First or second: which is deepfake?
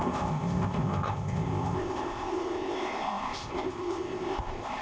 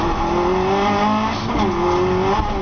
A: first